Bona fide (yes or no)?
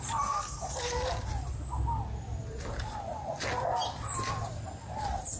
yes